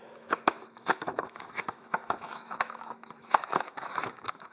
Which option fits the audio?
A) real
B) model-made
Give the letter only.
B